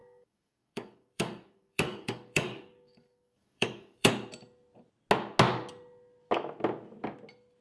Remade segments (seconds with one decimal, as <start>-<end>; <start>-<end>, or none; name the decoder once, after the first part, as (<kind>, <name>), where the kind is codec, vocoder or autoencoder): 0.0-4.1 (codec, DAC)

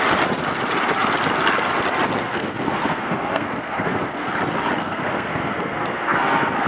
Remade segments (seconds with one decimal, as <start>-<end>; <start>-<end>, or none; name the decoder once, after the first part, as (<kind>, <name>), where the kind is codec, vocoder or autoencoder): 2.2-4.3 (codec, SNAC); 4.8-6.7

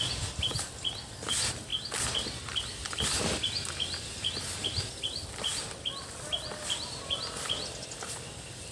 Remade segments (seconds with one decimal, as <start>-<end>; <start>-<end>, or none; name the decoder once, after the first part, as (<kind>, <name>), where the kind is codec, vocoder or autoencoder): none

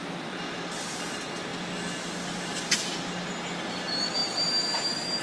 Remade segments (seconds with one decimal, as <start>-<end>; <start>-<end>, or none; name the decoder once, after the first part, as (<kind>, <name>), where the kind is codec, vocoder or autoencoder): none